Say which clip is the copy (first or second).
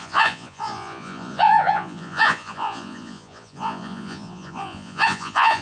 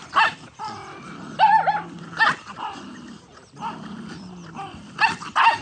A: first